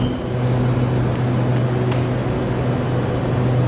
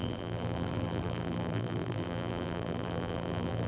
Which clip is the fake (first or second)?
second